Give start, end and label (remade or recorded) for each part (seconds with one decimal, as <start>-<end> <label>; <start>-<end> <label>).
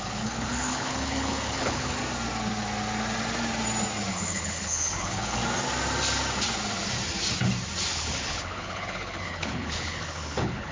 0.0-2.0 remade; 2.0-4.1 recorded; 4.1-5.4 remade; 5.4-7.9 recorded; 7.9-10.7 remade